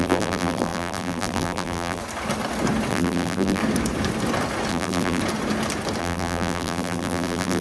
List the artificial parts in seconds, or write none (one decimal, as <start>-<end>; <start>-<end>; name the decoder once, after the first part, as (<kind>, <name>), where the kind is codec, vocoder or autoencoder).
0.0-2.0 (vocoder, BigVGAN v2); 2.9-3.6; 4.7-5.2; 6.0-7.6